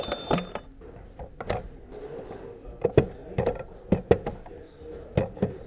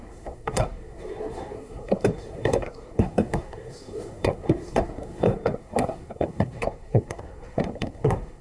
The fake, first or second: second